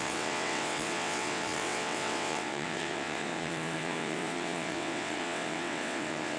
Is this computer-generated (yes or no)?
yes